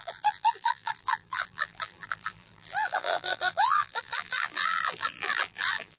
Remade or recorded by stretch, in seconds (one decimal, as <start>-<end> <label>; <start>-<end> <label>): 0.0-6.0 remade